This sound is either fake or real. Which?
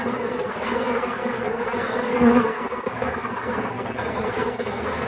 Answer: fake